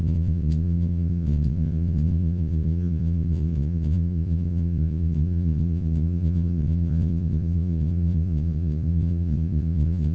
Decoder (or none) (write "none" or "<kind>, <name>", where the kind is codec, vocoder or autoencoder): vocoder, Vocos